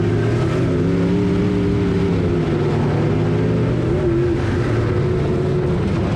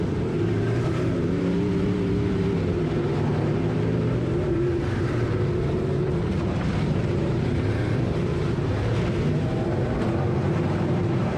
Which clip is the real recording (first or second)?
first